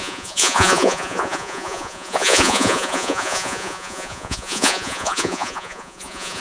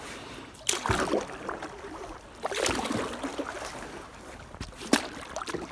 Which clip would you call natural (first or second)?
second